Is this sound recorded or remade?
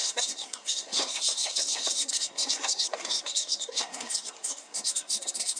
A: remade